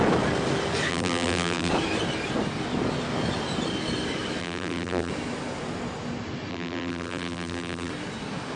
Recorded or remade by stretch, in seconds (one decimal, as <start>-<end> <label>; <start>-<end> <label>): 0.0-0.9 recorded; 0.9-1.7 remade; 1.7-4.4 recorded; 4.4-5.1 remade; 5.1-6.5 recorded; 6.5-7.9 remade; 7.9-8.6 recorded